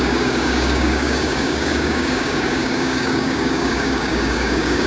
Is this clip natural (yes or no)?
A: no